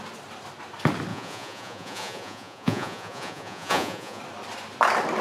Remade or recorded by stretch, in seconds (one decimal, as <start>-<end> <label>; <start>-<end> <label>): 0.0-1.1 recorded; 1.1-4.2 remade; 4.2-5.2 recorded